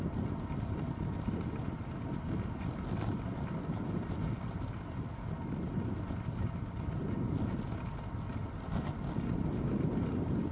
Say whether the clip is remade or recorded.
recorded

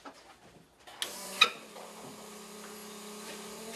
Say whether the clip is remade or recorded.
recorded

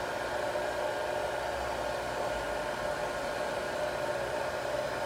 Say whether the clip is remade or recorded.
recorded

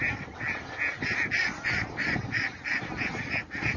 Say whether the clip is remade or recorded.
recorded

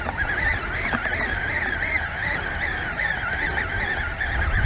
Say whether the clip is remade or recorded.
recorded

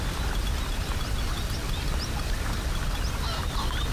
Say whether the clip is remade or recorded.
remade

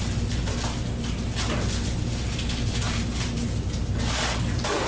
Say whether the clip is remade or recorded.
recorded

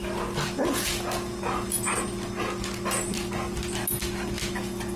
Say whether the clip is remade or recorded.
recorded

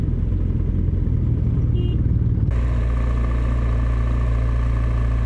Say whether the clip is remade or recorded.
recorded